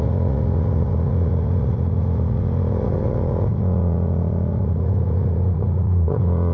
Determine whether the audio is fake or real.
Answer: fake